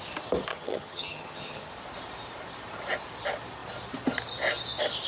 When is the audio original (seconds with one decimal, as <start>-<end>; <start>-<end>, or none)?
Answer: 0.0-0.5; 1.7-5.1